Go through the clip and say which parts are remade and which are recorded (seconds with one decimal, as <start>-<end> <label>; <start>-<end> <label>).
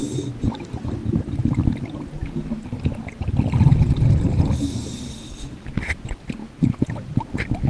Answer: 0.0-6.4 recorded; 6.4-6.9 remade; 6.9-7.7 recorded